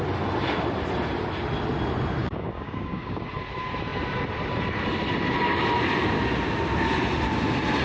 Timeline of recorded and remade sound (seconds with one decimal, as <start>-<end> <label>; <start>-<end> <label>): 0.0-2.2 recorded; 2.2-3.2 remade; 3.2-7.8 recorded